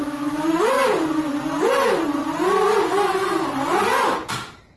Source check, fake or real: fake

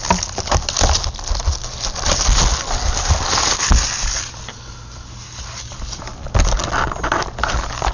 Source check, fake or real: real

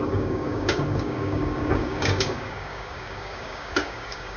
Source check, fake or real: fake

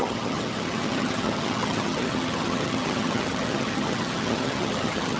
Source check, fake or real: fake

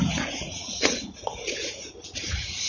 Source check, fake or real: fake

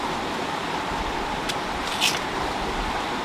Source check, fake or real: real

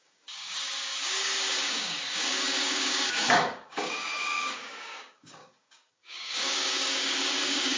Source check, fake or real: fake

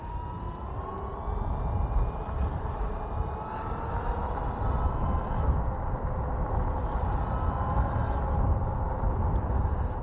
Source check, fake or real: real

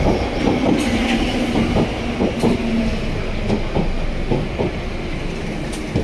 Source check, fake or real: real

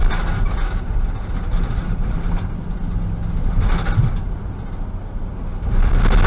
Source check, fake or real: real